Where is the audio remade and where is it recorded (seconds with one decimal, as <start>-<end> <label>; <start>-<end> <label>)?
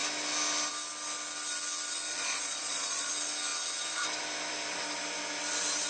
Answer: 0.0-2.1 recorded; 2.1-3.1 remade; 3.1-5.9 recorded